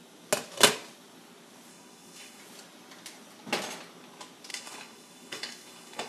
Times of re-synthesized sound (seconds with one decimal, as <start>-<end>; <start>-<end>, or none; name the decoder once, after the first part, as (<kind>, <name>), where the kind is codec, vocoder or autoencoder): 1.7-2.4 (codec, DAC); 4.5-6.1